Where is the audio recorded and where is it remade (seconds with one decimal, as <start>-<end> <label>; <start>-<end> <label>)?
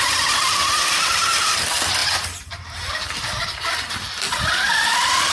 0.0-2.0 recorded; 2.0-3.7 remade; 3.7-5.3 recorded